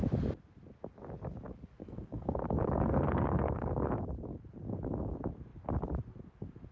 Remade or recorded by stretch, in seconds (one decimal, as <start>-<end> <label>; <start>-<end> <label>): 0.0-1.8 recorded; 1.8-3.9 remade; 3.9-6.7 recorded

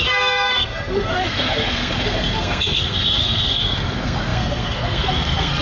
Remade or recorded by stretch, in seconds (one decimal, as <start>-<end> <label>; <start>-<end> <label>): 0.0-5.6 remade

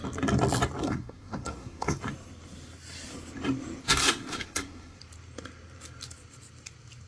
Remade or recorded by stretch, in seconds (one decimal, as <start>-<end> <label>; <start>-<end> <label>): 0.0-0.8 recorded; 0.8-2.0 remade; 2.0-4.0 recorded; 4.0-5.0 remade; 5.0-7.1 recorded

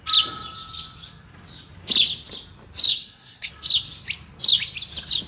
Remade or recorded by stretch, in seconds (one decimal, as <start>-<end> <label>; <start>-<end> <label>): 0.0-2.9 recorded; 2.9-3.5 remade; 3.5-5.3 recorded

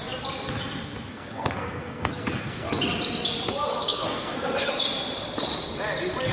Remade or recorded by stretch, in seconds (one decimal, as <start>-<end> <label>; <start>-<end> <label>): 0.0-1.1 recorded; 1.1-2.8 remade; 2.8-3.8 recorded; 3.8-4.7 remade; 4.7-6.3 recorded

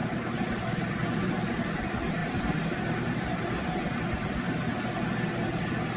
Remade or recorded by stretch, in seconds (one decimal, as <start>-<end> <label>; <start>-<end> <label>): 0.0-6.0 recorded